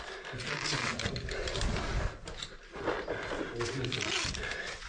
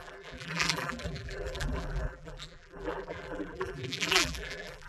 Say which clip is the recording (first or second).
first